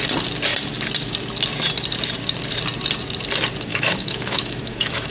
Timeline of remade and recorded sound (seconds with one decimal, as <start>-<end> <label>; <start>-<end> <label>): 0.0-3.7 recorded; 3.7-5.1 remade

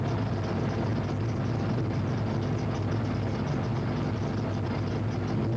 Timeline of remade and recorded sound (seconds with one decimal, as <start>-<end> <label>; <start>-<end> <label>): 0.0-5.6 recorded

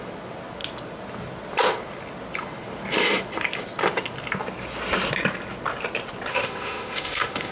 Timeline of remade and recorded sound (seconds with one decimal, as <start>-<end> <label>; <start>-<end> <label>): 0.0-6.3 recorded; 6.3-7.5 remade

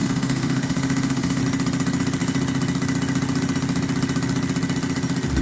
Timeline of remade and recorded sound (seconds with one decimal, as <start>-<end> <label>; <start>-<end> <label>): 0.0-1.4 remade; 1.4-5.4 recorded

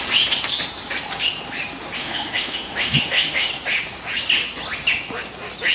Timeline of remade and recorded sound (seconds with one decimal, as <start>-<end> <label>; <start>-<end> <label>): 0.0-2.0 recorded; 2.0-3.5 remade; 3.5-5.7 recorded